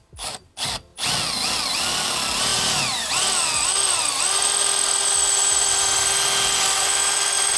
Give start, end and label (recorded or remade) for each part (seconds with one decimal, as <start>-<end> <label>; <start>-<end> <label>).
0.0-7.6 recorded